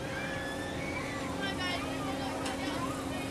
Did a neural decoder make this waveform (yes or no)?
no